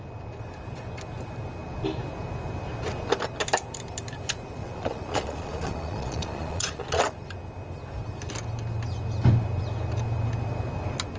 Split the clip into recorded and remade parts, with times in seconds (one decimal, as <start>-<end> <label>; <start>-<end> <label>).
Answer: 0.0-4.6 recorded; 4.6-7.0 remade; 7.0-11.2 recorded